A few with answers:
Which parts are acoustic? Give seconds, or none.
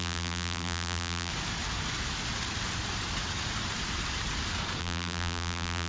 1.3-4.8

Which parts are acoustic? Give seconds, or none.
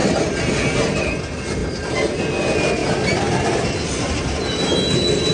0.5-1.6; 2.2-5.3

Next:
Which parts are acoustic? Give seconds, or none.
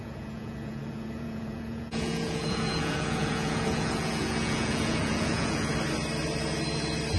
5.7-7.2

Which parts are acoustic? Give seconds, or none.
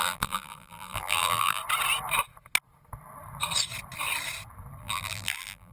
1.6-4.8